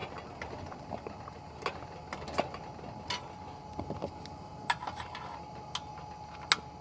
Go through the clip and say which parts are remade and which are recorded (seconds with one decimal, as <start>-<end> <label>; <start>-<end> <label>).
0.0-6.8 recorded